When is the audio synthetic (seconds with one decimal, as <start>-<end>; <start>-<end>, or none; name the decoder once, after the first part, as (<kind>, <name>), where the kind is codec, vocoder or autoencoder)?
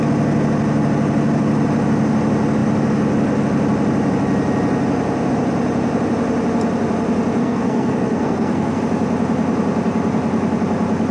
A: 7.4-8.8 (codec, SNAC)